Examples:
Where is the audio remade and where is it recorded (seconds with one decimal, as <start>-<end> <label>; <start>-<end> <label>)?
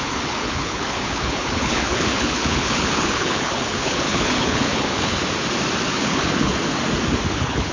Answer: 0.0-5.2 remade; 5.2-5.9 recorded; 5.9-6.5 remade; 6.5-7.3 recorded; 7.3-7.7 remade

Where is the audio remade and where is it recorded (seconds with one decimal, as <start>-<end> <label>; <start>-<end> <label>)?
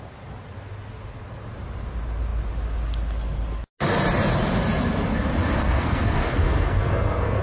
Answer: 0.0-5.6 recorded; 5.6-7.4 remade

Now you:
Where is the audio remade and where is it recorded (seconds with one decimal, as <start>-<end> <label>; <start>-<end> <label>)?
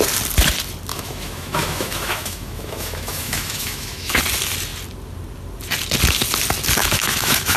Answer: 0.0-0.9 recorded; 0.9-4.2 remade; 4.2-6.8 recorded; 6.8-7.6 remade